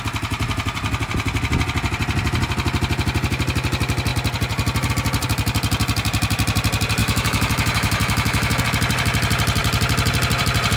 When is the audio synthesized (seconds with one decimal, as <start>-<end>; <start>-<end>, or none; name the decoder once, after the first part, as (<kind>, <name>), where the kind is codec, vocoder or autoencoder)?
7.0-8.6 (autoencoder, DAC-VAE)